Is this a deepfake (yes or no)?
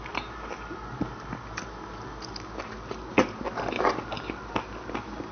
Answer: no